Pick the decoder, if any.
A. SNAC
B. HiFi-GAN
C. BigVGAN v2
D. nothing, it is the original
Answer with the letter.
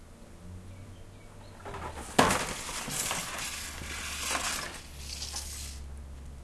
D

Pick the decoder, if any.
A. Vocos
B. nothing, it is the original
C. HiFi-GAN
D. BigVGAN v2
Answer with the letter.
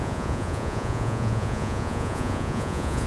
A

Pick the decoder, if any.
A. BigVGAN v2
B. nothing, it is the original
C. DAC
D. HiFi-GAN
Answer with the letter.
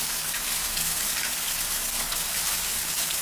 C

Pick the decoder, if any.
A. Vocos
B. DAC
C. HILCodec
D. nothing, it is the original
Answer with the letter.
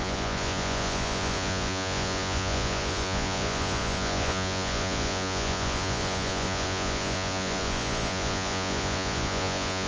A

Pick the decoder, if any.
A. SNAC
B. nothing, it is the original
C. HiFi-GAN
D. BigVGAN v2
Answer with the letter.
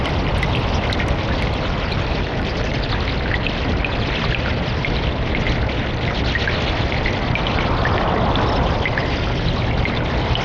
B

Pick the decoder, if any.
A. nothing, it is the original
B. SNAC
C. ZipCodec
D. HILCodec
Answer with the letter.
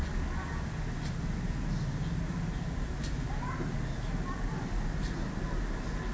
A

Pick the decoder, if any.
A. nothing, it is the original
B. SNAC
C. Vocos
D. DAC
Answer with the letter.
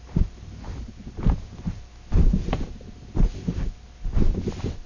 A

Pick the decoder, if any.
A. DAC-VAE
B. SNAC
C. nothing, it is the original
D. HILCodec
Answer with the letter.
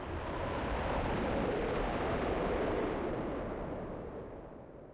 C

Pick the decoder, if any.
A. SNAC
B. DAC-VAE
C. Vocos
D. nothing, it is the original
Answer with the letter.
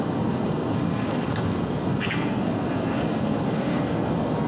A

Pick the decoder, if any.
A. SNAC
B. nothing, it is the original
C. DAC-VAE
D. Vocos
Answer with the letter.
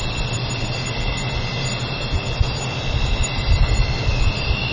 B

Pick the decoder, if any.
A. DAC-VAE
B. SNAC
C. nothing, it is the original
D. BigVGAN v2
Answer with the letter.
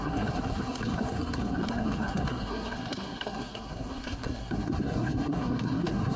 B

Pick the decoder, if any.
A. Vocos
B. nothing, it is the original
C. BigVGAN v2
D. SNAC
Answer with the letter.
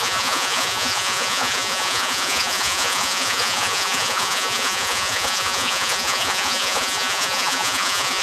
A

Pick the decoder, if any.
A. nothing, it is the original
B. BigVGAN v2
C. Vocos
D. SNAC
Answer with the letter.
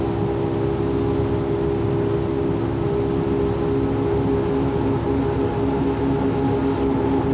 A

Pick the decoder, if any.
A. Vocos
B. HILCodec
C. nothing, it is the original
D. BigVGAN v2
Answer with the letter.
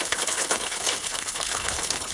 B